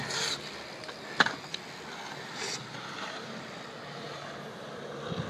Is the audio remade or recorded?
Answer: recorded